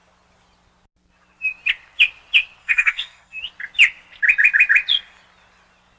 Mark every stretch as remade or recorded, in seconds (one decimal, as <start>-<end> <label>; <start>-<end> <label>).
0.0-2.6 recorded; 2.6-3.4 remade; 3.4-6.0 recorded